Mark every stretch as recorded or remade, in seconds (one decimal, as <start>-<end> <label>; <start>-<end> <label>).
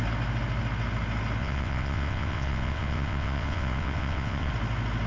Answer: 0.0-1.4 recorded; 1.4-4.5 remade; 4.5-5.1 recorded